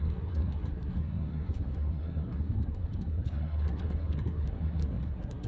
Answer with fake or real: fake